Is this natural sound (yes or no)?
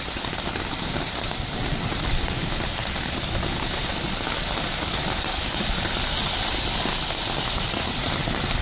yes